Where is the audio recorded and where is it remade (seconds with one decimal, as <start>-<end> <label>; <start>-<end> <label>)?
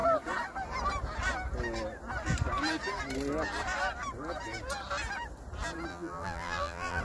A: 0.0-5.9 recorded; 5.9-7.0 remade